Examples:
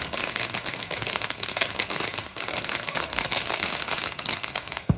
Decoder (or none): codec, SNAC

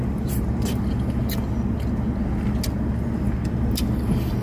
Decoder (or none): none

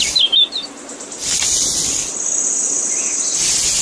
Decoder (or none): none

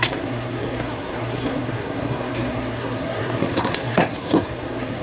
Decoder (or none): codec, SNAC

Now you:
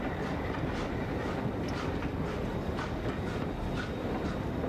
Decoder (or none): none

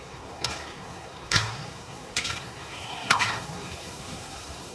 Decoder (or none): codec, SNAC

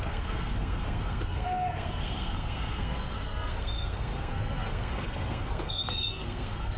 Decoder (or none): codec, SNAC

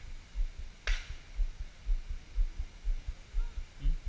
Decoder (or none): none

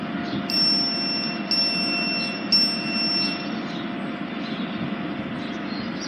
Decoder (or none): none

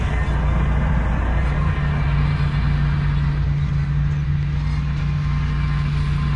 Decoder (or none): none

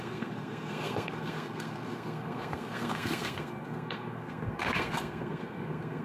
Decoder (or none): codec, SNAC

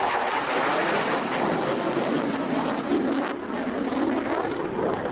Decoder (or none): none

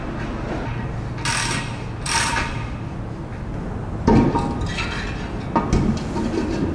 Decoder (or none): none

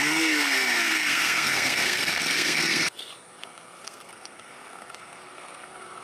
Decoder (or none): codec, SNAC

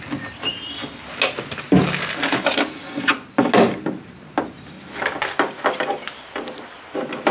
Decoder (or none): none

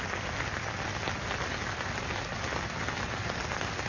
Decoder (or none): none